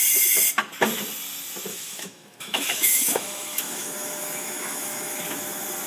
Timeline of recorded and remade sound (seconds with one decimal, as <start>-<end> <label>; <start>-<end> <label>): 0.0-1.7 recorded; 1.7-5.2 remade; 5.2-5.9 recorded